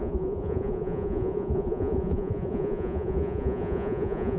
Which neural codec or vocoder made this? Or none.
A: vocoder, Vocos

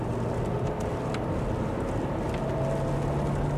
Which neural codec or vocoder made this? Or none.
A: none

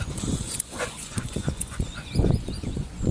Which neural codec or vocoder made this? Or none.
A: vocoder, Vocos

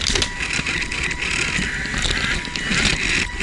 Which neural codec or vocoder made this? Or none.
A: none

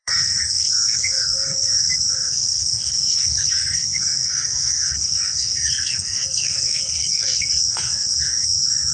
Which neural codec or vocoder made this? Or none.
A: codec, SNAC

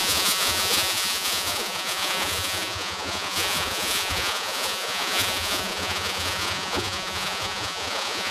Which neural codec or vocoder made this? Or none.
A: vocoder, Vocos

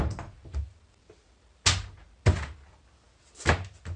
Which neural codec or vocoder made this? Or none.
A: none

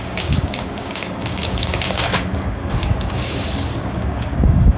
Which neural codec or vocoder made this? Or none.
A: codec, DAC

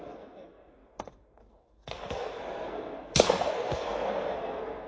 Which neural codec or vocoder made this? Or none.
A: codec, SNAC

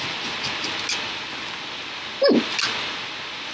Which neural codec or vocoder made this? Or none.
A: none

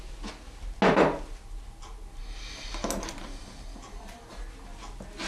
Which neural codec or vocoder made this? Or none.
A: none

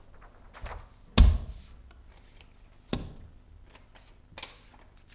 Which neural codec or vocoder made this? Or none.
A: none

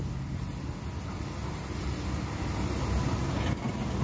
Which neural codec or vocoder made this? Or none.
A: none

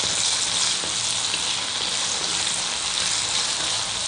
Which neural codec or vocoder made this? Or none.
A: none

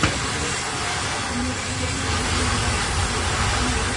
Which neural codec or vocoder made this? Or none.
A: none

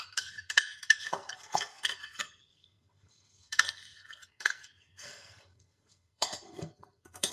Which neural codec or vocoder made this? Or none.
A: codec, SNAC